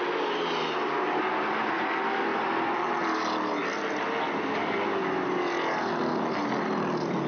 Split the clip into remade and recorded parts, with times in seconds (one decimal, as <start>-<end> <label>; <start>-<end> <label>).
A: 0.0-7.3 recorded